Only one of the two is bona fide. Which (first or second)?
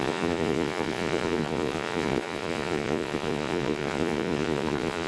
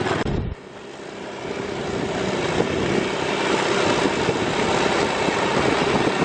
second